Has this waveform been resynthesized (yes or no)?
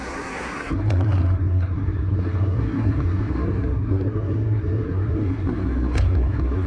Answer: yes